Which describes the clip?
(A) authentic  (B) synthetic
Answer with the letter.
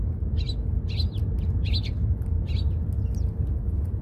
A